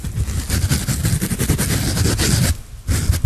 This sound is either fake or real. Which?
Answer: real